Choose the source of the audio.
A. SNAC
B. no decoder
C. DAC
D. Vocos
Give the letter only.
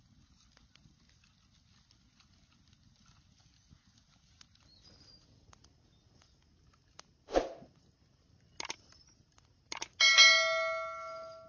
B